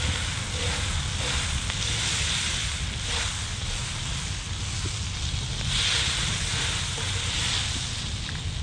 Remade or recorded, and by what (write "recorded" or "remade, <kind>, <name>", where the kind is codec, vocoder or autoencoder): recorded